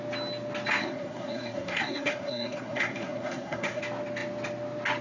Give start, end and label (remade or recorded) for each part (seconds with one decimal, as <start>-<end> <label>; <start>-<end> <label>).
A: 0.0-0.8 recorded; 0.8-3.8 remade; 3.8-5.0 recorded